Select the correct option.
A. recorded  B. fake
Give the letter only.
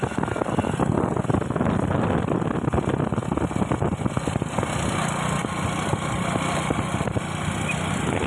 A